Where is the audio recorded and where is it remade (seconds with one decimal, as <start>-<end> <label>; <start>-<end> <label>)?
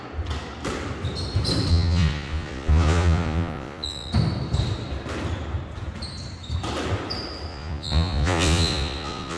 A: 0.0-1.7 recorded; 1.7-4.1 remade; 4.1-7.5 recorded; 7.5-9.4 remade